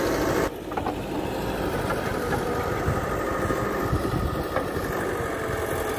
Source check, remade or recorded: recorded